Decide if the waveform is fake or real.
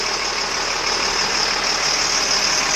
real